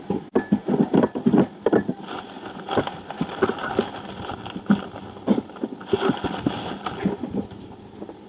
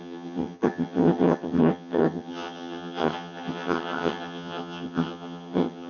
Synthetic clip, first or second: second